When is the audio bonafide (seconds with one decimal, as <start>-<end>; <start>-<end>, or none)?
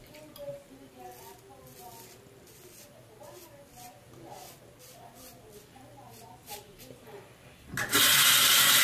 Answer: 0.0-8.8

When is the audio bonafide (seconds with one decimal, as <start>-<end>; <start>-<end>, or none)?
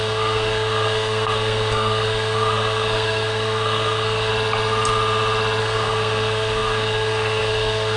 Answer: 4.3-5.6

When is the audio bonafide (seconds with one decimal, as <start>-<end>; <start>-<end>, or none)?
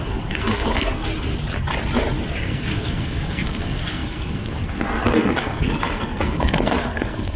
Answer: 1.1-2.4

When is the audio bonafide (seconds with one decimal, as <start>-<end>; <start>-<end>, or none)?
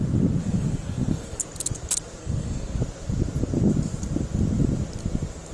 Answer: 0.0-0.4; 1.4-2.2; 2.8-5.5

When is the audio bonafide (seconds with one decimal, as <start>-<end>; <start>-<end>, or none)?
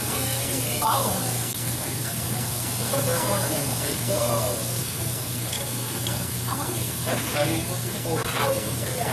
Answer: none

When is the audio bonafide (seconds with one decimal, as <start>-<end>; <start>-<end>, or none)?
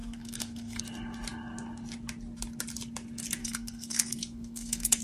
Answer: 0.8-3.4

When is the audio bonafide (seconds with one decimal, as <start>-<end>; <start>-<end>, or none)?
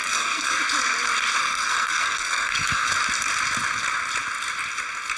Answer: 0.6-1.4; 2.9-5.2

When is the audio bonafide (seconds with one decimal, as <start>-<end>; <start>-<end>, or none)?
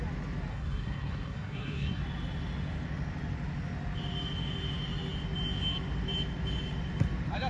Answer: 0.0-0.5; 2.0-7.5